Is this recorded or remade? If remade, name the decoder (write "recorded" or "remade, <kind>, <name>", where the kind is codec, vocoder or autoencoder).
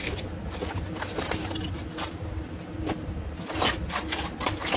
recorded